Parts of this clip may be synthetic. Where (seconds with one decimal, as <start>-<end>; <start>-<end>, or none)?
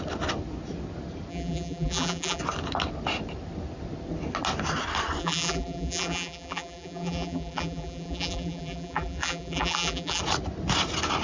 1.3-2.4; 5.2-10.2